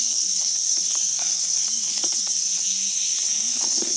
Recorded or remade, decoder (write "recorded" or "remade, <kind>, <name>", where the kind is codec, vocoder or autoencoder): remade, codec, SNAC